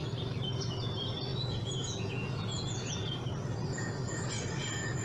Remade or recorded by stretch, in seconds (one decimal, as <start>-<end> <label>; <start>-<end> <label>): 0.0-1.3 recorded; 1.3-3.2 remade; 3.2-5.0 recorded